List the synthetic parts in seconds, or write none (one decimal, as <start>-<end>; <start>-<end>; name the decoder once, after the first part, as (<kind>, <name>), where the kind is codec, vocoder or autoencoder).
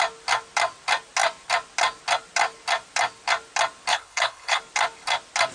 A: 3.9-4.6 (codec, HILCodec)